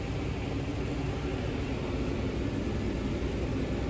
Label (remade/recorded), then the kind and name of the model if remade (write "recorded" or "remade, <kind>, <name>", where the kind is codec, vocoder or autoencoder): recorded